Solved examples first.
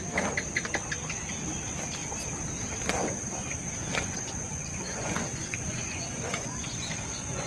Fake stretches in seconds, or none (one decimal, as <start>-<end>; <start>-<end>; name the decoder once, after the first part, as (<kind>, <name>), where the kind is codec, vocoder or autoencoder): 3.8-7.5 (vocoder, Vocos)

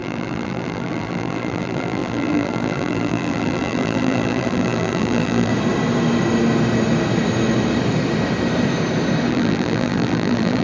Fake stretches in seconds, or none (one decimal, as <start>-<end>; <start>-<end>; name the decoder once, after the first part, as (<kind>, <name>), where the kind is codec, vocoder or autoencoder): 0.0-5.5 (vocoder, BigVGAN v2); 9.3-10.6

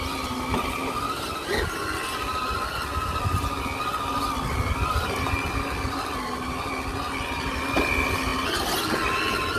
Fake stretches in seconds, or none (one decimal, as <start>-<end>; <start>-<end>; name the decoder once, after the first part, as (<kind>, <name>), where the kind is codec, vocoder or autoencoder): none

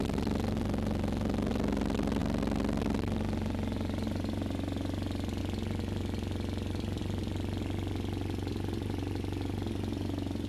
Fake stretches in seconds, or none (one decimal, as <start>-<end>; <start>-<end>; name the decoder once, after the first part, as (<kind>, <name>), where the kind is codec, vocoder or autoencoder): none